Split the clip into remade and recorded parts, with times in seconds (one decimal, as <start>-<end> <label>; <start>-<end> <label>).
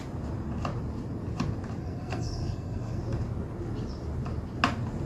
0.0-1.8 recorded; 1.8-3.0 remade; 3.0-5.1 recorded